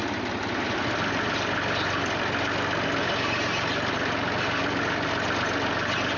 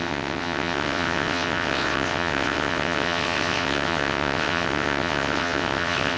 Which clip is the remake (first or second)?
second